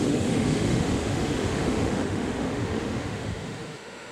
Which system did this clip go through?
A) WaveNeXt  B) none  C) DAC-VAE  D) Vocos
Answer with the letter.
C